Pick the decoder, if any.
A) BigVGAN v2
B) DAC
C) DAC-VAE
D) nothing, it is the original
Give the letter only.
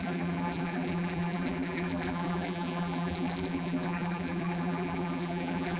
A